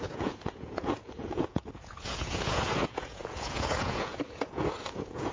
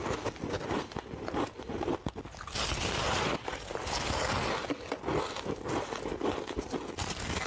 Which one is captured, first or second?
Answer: second